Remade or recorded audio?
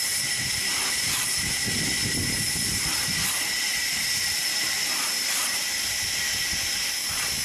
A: recorded